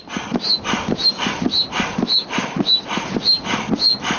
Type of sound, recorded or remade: recorded